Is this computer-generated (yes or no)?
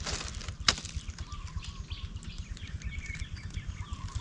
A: no